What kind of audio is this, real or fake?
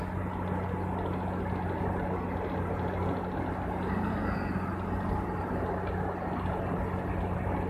real